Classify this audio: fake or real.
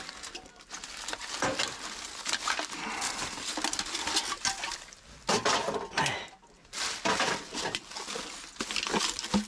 real